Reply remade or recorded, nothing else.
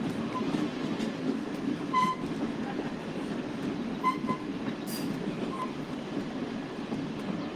recorded